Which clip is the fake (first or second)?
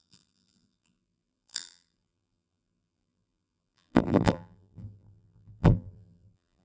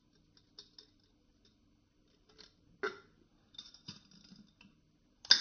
first